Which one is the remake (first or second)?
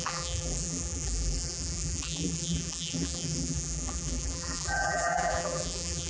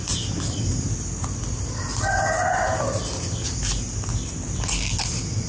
first